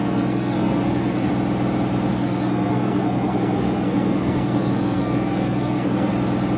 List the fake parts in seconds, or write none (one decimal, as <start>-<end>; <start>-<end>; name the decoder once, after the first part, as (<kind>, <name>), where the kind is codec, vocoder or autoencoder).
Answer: 0.0-1.3 (codec, SNAC); 2.1-6.1